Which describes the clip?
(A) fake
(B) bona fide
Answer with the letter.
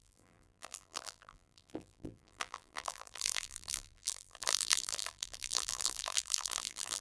A